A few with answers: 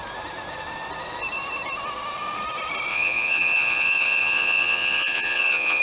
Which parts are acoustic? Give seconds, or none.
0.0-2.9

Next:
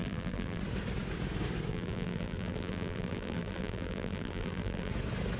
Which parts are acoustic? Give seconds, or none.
0.6-1.7; 4.9-5.4

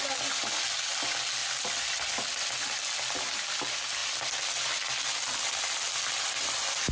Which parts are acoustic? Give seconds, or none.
0.0-6.9